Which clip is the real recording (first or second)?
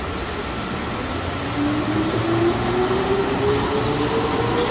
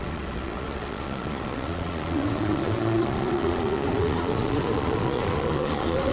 first